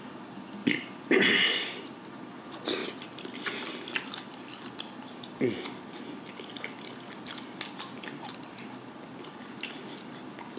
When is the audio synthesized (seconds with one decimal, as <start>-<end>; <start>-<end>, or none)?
0.6-1.2; 2.8-5.4